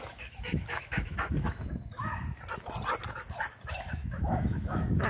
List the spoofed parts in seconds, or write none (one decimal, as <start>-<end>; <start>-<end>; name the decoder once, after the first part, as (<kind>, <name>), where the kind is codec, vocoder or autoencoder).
0.0-2.1 (autoencoder, DAC-VAE); 3.7-5.1